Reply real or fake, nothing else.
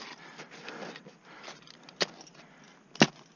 real